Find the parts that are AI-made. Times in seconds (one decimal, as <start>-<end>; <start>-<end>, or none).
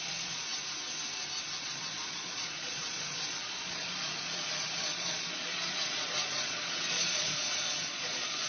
0.0-0.5; 1.6-8.5